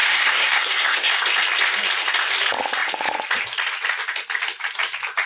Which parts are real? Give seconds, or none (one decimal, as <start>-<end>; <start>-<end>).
1.1-5.3